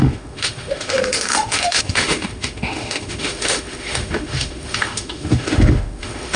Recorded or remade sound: remade